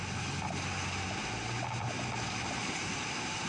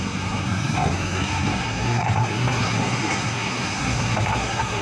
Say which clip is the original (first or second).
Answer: first